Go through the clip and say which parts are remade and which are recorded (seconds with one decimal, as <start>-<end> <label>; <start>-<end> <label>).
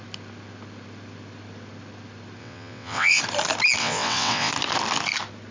0.0-2.4 recorded; 2.4-3.2 remade; 3.2-3.8 recorded; 3.8-4.5 remade; 4.5-5.5 recorded